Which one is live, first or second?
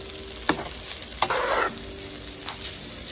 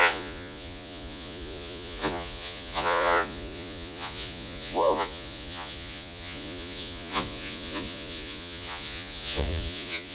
first